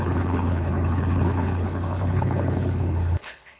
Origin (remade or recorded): remade